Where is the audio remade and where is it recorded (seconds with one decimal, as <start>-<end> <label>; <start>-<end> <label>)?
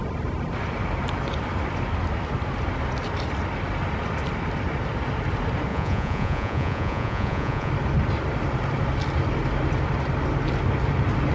0.0-5.7 recorded; 5.7-7.7 remade; 7.7-11.3 recorded